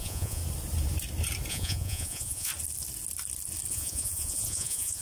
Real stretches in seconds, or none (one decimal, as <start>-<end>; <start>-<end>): 0.4-1.5; 2.5-3.7

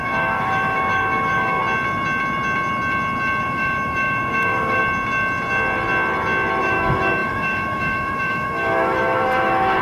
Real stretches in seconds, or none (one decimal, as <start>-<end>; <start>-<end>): 1.6-3.4; 4.8-6.6

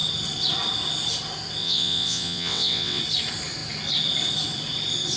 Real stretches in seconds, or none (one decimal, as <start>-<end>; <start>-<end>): 0.0-1.6; 3.0-5.2